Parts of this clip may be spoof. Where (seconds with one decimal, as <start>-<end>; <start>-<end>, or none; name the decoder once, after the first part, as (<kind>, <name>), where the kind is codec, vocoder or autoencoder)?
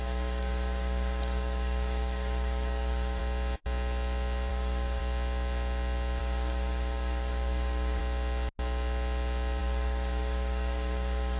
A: 0.0-3.2 (codec, DAC); 4.5-5.0; 6.2-8.0; 9.6-11.4